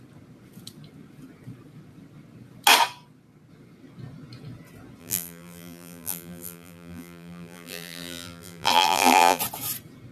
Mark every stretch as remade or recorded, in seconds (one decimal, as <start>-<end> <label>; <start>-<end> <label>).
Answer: 0.0-5.0 recorded; 5.0-9.4 remade; 9.4-10.1 recorded

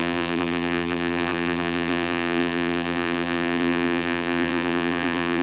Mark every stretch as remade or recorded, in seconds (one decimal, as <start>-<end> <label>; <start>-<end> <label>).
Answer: 0.0-5.4 remade